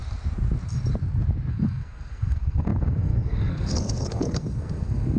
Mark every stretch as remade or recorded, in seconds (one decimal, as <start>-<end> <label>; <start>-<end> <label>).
0.0-1.5 recorded; 1.5-5.2 remade